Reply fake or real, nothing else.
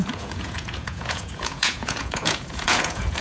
fake